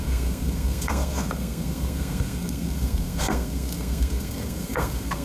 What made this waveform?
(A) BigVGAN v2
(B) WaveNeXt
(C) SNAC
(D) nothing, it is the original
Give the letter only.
C